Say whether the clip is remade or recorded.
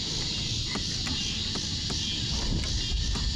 recorded